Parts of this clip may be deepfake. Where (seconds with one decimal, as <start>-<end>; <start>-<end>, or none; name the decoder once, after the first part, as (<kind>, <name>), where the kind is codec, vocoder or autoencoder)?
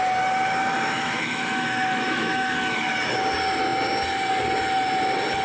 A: 0.7-2.9 (autoencoder, DAC-VAE)